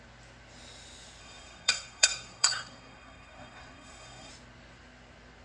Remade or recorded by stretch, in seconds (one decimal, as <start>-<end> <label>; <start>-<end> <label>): 0.0-1.2 recorded; 1.2-4.3 remade; 4.3-5.4 recorded